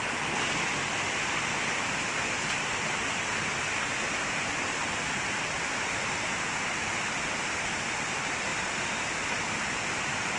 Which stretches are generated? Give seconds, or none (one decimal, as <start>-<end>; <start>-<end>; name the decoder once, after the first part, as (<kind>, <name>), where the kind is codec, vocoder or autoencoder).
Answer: none